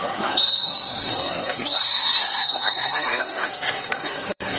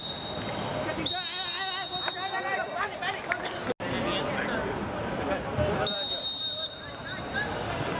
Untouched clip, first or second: second